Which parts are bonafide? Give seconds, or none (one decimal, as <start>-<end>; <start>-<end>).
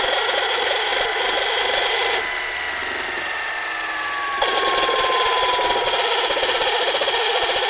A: 0.0-7.7